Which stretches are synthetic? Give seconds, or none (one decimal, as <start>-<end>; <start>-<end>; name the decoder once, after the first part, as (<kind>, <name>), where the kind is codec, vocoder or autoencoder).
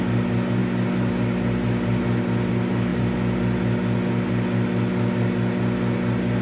none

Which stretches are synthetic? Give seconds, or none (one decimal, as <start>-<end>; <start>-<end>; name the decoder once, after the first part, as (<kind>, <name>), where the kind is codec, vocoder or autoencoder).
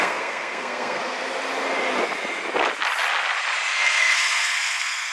0.0-1.0 (codec, SNAC); 3.7-5.1